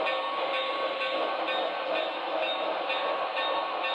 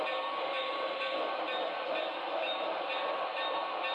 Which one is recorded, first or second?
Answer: first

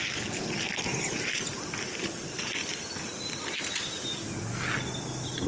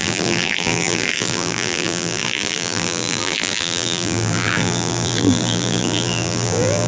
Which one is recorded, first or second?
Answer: first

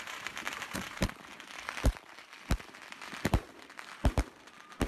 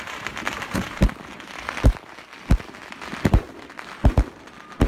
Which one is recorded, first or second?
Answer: second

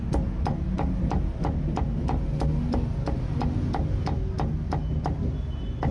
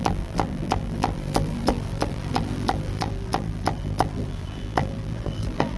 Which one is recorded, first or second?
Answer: first